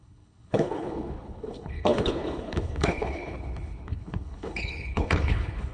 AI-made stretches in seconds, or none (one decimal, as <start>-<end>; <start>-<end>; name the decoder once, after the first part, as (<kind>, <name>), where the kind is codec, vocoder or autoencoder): 0.0-5.7 (codec, HILCodec)